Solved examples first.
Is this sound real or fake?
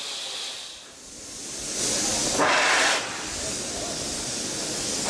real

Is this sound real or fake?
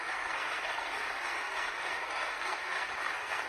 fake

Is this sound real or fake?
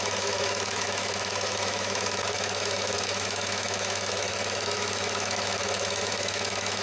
fake